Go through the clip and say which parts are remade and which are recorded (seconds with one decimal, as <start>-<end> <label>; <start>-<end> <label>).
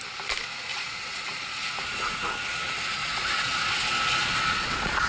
0.0-0.7 recorded; 0.7-1.4 remade; 1.4-3.0 recorded; 3.0-3.8 remade; 3.8-4.2 recorded; 4.2-5.1 remade